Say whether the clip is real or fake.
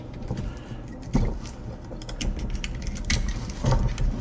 real